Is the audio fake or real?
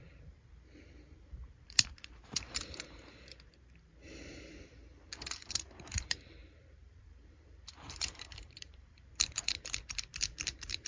fake